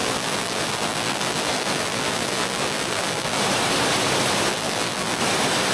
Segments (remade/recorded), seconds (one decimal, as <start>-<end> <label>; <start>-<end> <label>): 0.0-3.4 remade; 3.4-4.5 recorded; 4.5-5.2 remade; 5.2-5.7 recorded